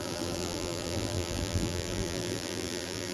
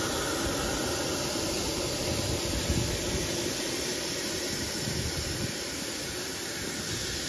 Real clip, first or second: second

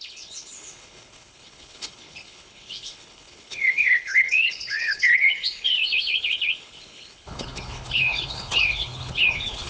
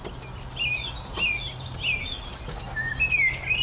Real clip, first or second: second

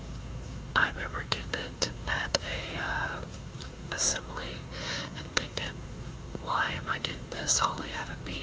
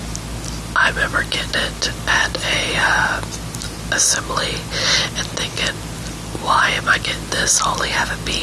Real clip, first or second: second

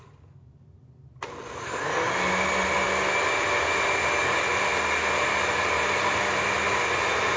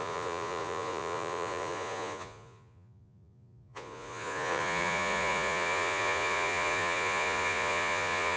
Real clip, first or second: first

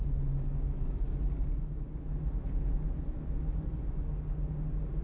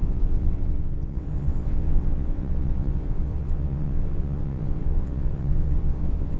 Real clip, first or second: first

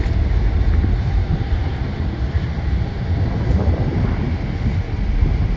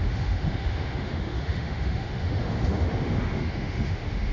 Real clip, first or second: first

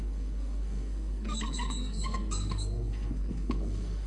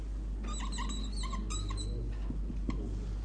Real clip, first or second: second